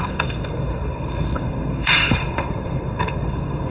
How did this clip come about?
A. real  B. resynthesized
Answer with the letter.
B